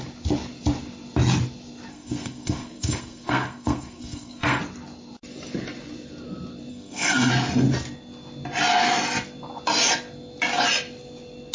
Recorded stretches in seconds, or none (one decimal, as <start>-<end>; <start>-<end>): 0.0-1.9; 4.6-6.7; 7.3-11.5